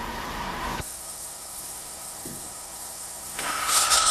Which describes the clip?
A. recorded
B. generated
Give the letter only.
B